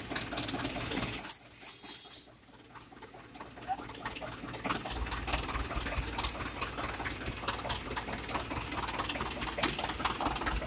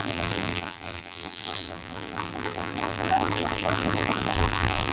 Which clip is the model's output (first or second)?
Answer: second